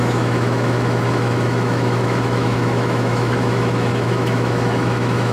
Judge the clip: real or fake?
fake